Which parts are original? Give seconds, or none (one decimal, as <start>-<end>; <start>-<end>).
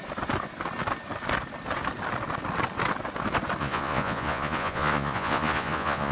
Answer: 0.0-3.6